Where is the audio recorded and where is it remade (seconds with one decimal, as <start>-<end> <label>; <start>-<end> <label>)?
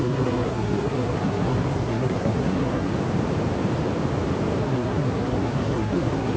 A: 0.0-2.9 remade; 2.9-4.6 recorded; 4.6-6.4 remade